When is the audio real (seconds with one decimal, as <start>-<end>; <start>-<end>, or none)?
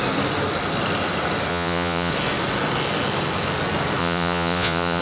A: 0.0-1.5; 2.1-4.0